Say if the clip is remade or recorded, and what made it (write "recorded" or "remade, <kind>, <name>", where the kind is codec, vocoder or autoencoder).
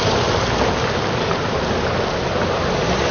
recorded